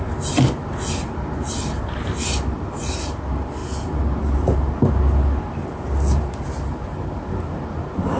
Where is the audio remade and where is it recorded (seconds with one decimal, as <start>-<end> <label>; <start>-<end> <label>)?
0.0-8.2 recorded